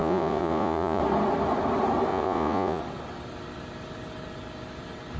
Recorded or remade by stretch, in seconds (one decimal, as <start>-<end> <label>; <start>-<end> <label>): 0.0-1.0 remade; 1.0-2.1 recorded; 2.1-2.8 remade; 2.8-5.2 recorded